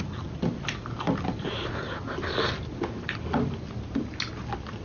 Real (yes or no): yes